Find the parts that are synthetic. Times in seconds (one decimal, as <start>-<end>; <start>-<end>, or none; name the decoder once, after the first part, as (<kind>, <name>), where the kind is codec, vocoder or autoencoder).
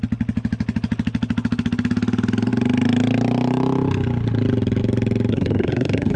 5.3-6.2 (codec, SNAC)